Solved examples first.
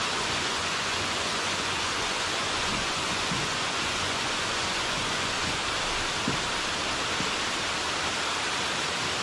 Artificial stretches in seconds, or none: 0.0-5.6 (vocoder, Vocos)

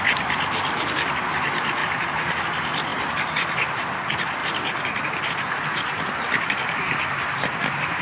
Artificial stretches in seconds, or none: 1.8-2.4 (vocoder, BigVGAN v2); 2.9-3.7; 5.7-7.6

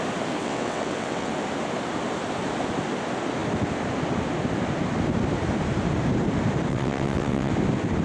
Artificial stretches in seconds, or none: 0.4-1.3 (vocoder, WaveNeXt); 6.7-7.5

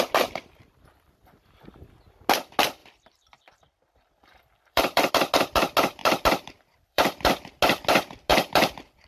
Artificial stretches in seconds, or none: 2.8-5.1 (vocoder, BigVGAN v2); 6.0-7.3; 8.3-9.1

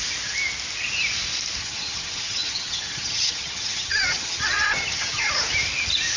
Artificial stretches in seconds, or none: 1.6-5.3 (vocoder, HiFi-GAN)

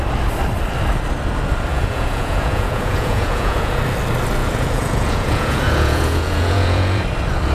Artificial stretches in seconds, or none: 1.7-3.8 (vocoder, Vocos); 4.4-7.0